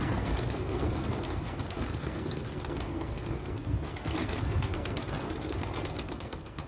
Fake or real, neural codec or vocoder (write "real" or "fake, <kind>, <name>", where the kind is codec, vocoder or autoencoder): fake, codec, SNAC